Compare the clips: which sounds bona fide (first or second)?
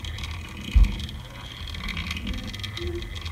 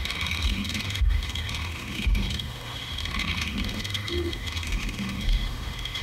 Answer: first